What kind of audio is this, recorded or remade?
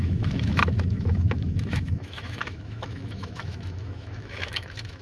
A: remade